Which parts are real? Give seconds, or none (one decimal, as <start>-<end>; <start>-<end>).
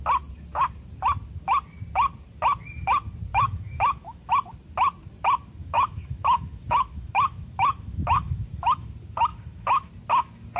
0.0-3.3; 4.3-5.6; 8.9-9.3; 9.9-10.6